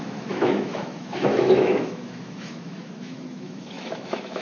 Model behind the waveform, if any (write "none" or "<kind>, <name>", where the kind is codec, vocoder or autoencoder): autoencoder, DAC-VAE